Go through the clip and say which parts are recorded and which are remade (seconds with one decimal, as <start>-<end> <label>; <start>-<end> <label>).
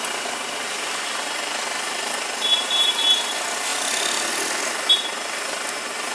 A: 0.0-6.1 recorded